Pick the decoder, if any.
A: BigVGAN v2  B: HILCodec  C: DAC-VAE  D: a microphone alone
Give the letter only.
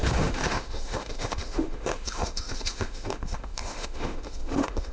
C